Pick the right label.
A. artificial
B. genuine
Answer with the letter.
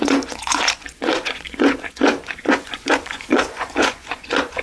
A